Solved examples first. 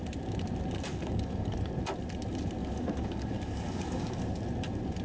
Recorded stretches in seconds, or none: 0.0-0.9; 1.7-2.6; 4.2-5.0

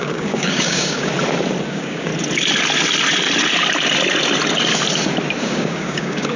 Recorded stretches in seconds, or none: 1.1-1.7; 2.1-5.4

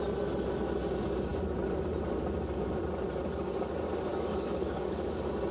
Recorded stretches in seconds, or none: 0.0-4.1; 5.1-5.5

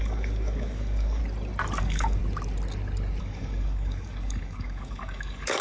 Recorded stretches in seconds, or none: 1.2-1.8; 2.2-3.2

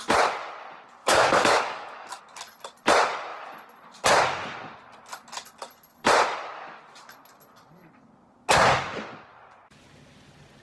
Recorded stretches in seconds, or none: 0.0-1.0; 2.2-10.6